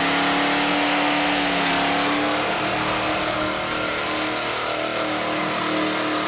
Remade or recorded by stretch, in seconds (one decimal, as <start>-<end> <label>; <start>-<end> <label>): 0.0-0.7 recorded; 0.7-1.7 remade; 1.7-6.3 recorded